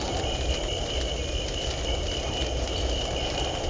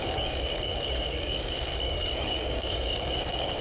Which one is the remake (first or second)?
second